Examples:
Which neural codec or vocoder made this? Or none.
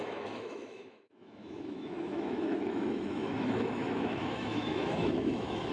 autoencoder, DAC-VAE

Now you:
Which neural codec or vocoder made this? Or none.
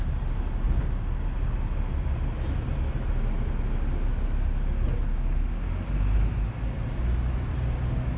none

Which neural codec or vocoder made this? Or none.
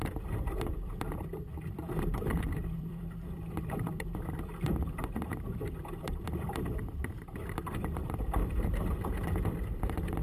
vocoder, BigVGAN v2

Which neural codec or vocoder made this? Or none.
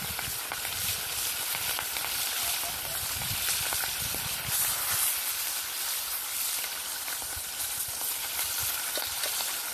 vocoder, BigVGAN v2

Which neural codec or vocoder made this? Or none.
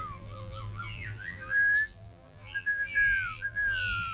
vocoder, BigVGAN v2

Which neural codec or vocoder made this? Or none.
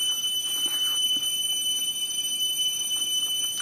none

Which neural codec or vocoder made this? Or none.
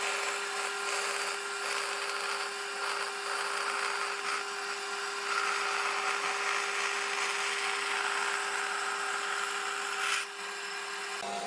none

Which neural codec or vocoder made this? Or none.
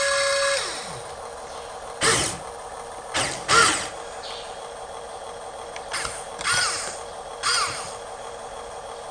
none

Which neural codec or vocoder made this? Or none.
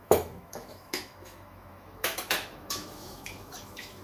autoencoder, DAC-VAE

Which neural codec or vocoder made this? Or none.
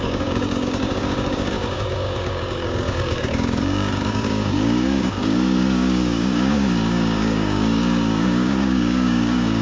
codec, DAC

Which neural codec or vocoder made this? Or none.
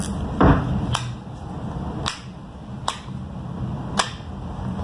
none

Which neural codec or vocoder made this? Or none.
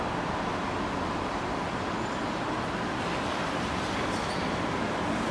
none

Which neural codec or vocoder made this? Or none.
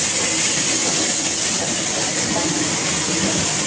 none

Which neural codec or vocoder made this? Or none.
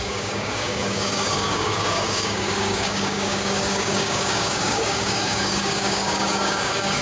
codec, DAC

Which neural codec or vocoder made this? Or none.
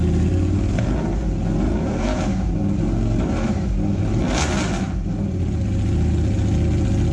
none